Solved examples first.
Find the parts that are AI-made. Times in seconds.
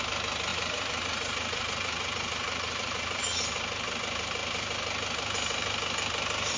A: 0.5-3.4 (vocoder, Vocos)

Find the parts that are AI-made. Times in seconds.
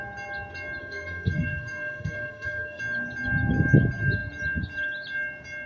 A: 0.8-2.8 (codec, SNAC)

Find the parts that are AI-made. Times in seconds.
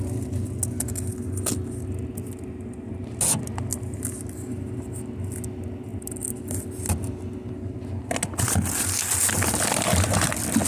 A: none